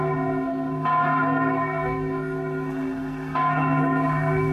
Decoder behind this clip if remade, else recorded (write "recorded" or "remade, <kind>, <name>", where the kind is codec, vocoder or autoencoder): remade, codec, SNAC